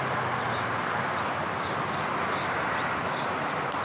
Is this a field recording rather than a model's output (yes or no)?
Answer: yes